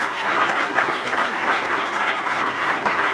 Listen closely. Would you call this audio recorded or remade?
remade